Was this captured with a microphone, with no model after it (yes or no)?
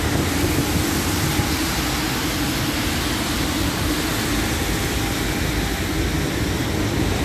yes